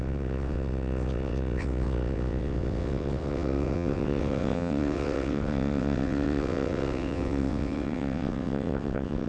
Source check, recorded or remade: remade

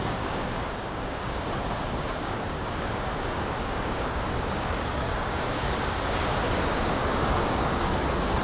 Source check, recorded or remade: remade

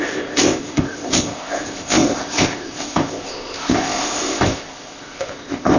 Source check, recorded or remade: remade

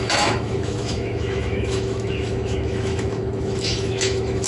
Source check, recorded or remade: remade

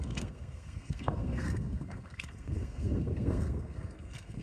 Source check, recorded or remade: remade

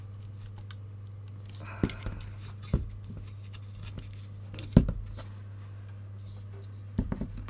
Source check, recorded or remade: recorded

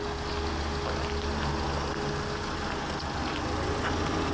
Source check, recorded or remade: recorded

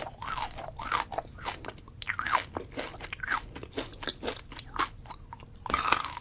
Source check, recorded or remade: recorded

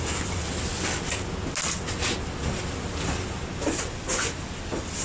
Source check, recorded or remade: recorded